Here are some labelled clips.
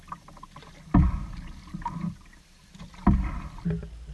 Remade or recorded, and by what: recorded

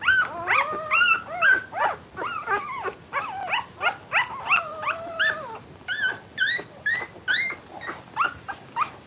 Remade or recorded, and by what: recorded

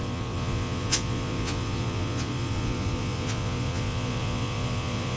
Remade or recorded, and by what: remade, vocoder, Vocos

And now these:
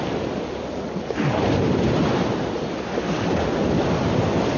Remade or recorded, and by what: recorded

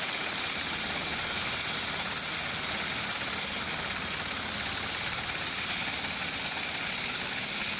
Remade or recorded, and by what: recorded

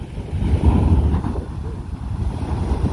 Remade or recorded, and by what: recorded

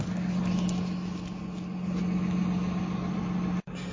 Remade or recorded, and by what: recorded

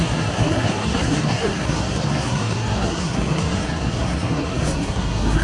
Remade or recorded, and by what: remade, codec, SNAC